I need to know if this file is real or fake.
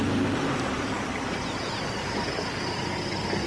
real